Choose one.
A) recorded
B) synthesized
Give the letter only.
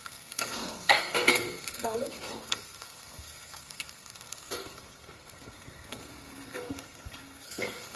B